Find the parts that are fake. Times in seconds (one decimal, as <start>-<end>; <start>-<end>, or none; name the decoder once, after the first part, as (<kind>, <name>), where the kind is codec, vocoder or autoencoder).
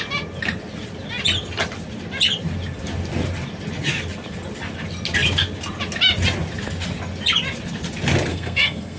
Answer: 8.3-9.0 (codec, SNAC)